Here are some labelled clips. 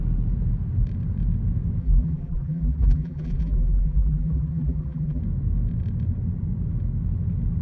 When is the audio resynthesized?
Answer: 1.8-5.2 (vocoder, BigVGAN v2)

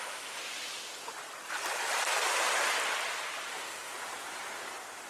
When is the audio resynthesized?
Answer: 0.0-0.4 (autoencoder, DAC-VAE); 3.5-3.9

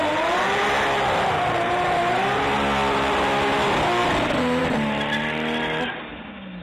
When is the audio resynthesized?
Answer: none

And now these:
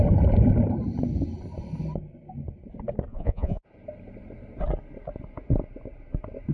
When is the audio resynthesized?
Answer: 3.1-3.6 (vocoder, Vocos)

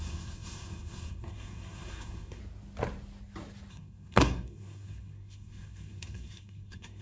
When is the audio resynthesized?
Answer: 0.0-2.4 (codec, SNAC); 3.7-7.0

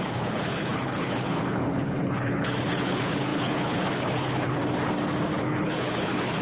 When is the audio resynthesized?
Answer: 0.0-4.6 (codec, HILCodec); 5.4-6.4

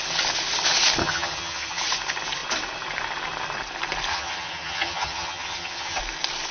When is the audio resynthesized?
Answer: 1.0-1.8 (vocoder, HiFi-GAN); 4.1-6.0

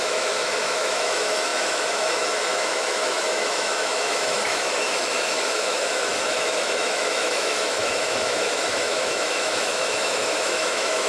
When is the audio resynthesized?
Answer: 0.0-11.1 (autoencoder, DAC-VAE)